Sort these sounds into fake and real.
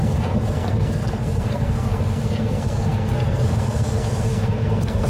fake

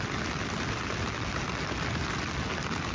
real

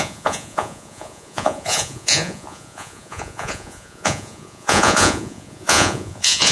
fake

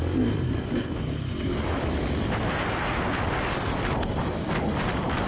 real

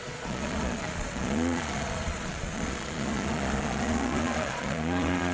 fake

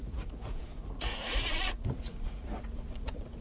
fake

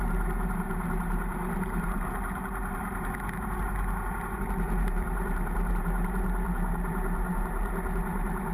fake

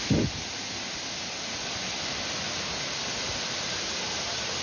real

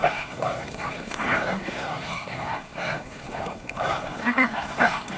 fake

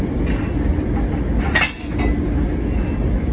real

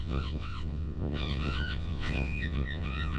fake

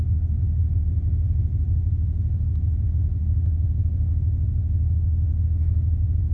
real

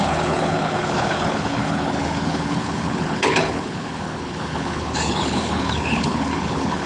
fake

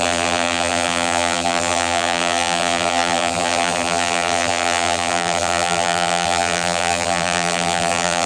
fake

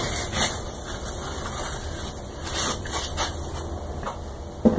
real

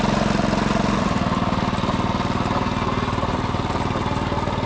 real